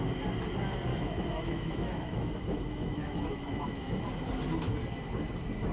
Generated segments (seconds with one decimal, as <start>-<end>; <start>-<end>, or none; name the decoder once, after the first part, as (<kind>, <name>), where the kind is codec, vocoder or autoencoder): 0.9-4.0 (autoencoder, DAC-VAE)